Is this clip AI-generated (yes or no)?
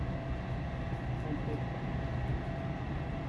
no